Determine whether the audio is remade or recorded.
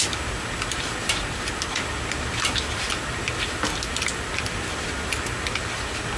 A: recorded